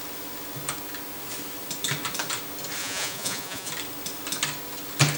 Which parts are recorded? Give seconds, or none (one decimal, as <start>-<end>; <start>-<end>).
0.0-2.8; 3.7-5.2